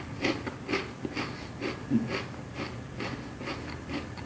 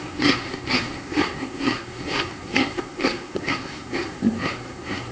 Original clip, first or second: first